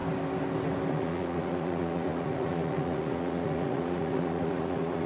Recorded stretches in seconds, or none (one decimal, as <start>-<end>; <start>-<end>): 0.0-0.9